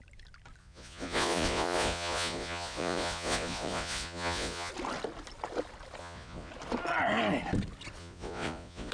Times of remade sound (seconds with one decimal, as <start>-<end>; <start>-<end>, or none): 0.6-4.7; 6.0-6.5; 8.0-8.9